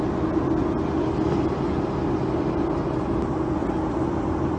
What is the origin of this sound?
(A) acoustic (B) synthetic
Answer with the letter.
A